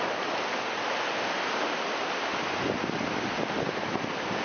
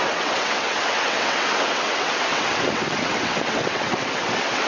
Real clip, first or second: first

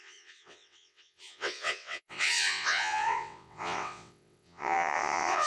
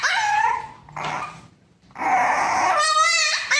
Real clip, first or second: second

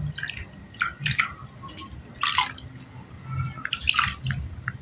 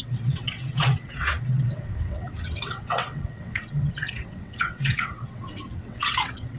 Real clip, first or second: first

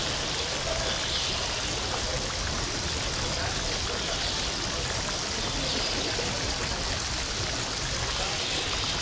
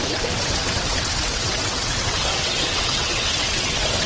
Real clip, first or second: first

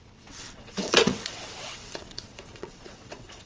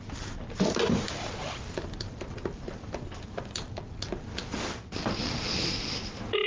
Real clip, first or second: second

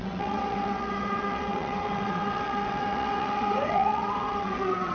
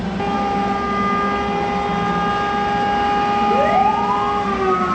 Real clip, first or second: second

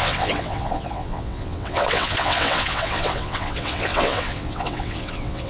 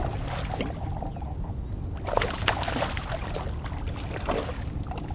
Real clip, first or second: second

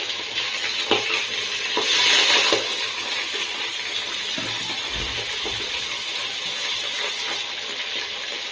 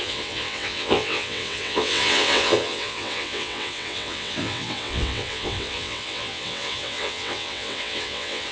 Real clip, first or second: first